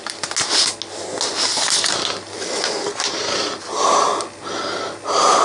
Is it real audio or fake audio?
real